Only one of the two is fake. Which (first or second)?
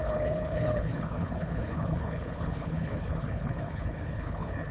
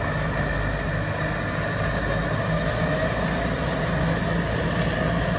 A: first